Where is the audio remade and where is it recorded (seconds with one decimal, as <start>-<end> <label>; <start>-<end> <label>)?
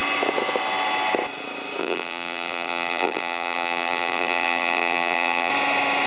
0.0-1.8 recorded; 1.8-5.5 remade; 5.5-6.1 recorded